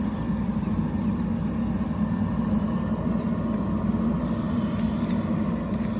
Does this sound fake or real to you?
real